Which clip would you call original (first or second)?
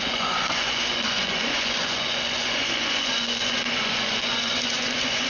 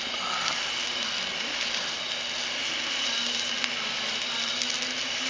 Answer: second